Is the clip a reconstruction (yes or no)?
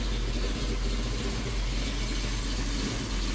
no